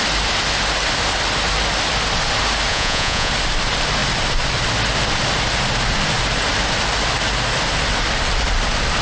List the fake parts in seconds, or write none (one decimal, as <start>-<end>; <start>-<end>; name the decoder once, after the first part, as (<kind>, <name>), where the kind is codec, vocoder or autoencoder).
2.7-3.3 (vocoder, Vocos)